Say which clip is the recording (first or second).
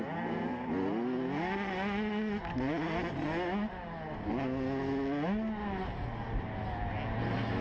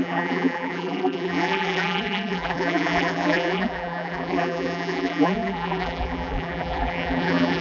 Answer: first